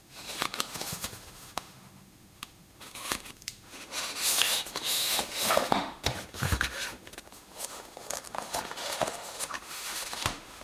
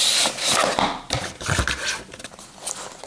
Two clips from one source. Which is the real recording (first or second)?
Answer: second